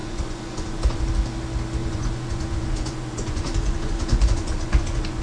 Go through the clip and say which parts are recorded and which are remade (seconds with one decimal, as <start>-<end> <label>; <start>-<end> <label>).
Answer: 0.0-1.0 remade; 1.0-1.8 recorded; 1.8-5.2 remade